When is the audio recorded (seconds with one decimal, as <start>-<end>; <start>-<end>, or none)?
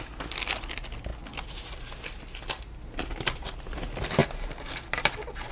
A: 0.0-5.5